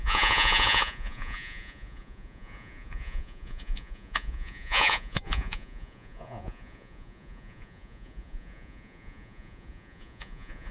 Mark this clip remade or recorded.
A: remade